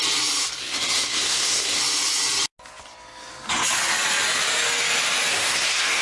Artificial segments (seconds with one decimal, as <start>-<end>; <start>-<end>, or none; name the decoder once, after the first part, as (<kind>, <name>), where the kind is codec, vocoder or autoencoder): 0.6-1.8 (codec, SNAC); 5.3-6.0

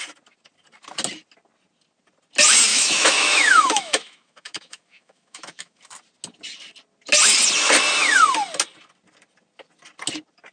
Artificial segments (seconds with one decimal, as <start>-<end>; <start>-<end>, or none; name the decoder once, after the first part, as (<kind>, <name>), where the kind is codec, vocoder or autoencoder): 2.7-5.8 (autoencoder, DAC-VAE)

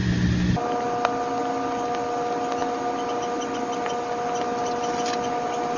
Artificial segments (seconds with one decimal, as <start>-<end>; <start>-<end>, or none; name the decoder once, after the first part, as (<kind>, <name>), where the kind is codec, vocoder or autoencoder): none